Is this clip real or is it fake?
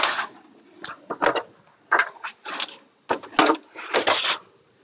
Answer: real